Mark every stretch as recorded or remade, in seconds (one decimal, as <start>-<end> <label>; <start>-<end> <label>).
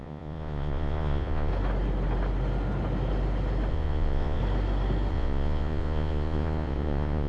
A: 0.0-1.5 remade; 1.5-3.7 recorded; 3.7-4.4 remade; 4.4-5.1 recorded; 5.1-7.3 remade